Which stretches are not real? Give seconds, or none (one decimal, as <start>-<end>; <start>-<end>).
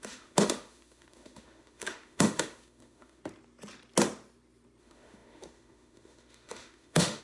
0.0-3.2; 4.8-7.2